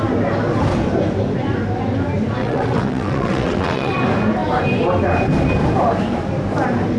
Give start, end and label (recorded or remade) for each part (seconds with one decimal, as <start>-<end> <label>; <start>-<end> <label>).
0.0-2.4 recorded; 2.4-4.0 remade; 4.0-7.0 recorded